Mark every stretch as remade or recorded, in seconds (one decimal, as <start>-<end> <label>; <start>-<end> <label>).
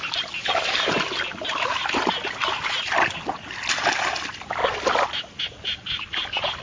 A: 0.0-6.6 recorded